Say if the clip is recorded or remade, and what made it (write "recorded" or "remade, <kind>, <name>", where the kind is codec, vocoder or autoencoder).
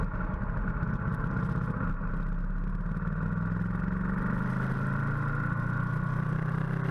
recorded